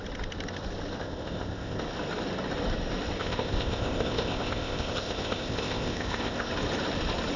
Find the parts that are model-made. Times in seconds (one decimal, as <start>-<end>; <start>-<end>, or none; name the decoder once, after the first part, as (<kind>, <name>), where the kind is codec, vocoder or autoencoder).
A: 1.0-1.8 (codec, ZipCodec); 3.2-6.5